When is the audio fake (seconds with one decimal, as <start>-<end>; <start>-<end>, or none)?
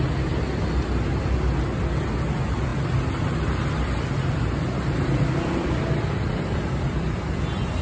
2.7-7.2